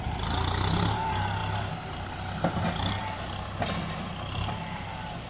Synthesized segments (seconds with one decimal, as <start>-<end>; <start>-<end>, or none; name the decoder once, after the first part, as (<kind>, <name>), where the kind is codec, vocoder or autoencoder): none